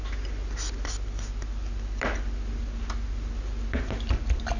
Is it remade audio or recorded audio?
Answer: recorded